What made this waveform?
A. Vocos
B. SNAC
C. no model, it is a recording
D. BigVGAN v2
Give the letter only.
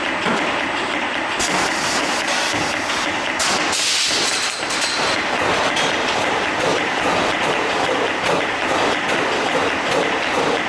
C